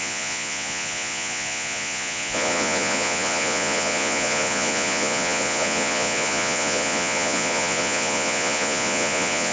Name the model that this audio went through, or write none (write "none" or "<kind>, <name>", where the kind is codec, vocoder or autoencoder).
vocoder, Vocos